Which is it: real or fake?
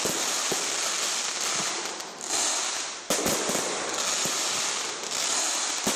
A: real